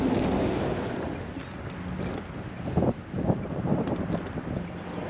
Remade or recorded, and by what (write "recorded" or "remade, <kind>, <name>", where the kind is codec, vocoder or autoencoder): recorded